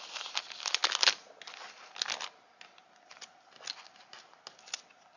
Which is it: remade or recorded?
recorded